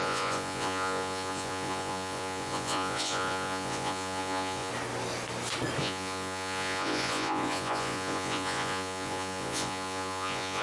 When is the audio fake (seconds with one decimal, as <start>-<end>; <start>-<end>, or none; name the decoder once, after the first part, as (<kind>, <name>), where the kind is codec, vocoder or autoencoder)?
0.0-4.7 (vocoder, Vocos); 5.8-10.6